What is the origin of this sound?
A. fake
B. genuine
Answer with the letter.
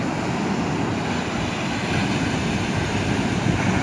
B